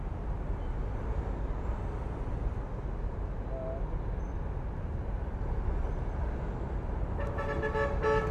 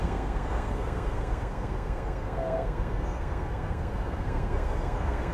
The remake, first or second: second